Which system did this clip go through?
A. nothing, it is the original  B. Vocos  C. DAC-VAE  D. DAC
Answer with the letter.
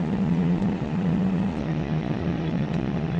B